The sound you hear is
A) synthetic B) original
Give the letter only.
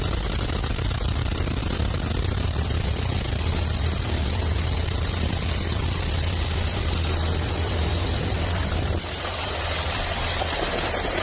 A